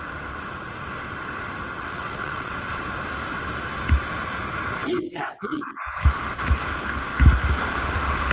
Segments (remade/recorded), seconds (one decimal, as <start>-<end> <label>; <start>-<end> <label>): 0.0-1.8 recorded; 1.8-2.5 remade; 2.5-4.8 recorded; 4.8-5.8 remade; 5.8-8.3 recorded